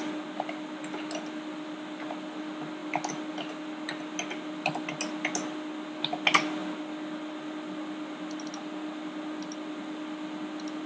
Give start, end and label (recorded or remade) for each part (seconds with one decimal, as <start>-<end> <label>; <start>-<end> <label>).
0.0-10.9 recorded